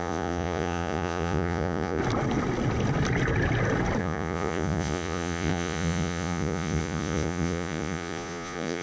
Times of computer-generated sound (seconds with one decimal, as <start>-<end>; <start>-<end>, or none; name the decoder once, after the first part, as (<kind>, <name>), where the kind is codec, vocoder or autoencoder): 0.0-2.0 (vocoder, Vocos); 4.0-8.8